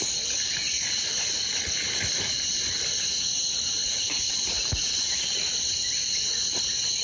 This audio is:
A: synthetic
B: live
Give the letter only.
B